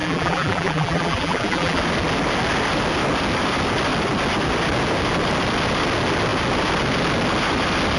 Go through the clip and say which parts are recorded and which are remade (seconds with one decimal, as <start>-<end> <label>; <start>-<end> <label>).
0.0-1.8 remade; 1.8-8.0 recorded